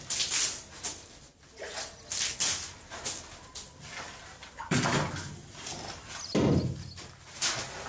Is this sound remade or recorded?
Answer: recorded